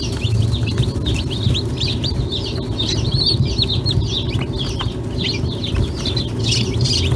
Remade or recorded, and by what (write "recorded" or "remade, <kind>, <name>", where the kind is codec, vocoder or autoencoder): recorded